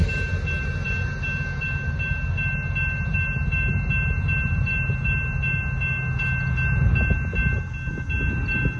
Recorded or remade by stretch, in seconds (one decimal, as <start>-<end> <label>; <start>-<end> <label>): 0.0-8.8 recorded